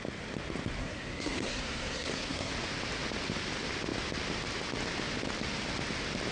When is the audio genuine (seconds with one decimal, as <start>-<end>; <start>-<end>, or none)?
0.0-0.8; 2.5-6.3